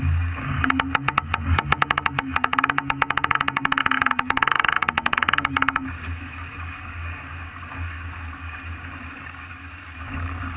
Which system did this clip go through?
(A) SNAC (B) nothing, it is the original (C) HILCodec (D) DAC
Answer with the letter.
D